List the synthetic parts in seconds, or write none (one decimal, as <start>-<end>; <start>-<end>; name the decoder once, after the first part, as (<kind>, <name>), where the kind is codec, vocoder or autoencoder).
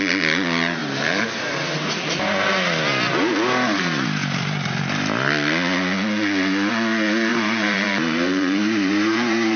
0.8-1.9 (vocoder, BigVGAN v2); 7.3-9.6